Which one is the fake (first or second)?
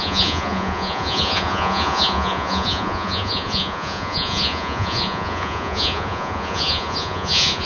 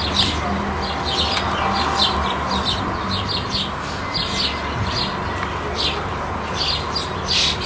first